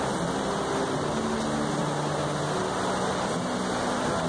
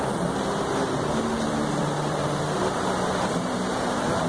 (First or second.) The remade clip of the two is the second